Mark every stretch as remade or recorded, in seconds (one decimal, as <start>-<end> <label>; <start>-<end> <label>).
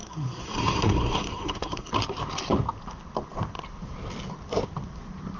0.0-1.9 remade; 1.9-5.4 recorded